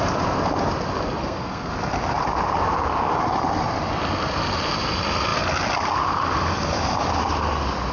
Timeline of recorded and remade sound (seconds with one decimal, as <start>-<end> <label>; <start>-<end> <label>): 0.0-1.2 recorded; 1.2-1.7 remade; 1.7-7.9 recorded